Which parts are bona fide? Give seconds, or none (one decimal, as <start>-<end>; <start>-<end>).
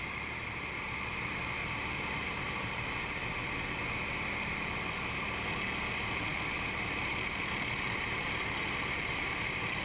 3.2-4.1